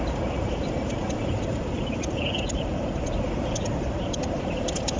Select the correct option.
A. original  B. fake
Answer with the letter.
A